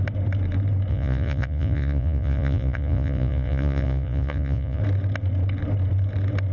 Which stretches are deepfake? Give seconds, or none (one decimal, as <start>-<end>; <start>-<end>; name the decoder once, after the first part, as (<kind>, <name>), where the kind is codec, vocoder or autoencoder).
0.9-4.8 (vocoder, Vocos)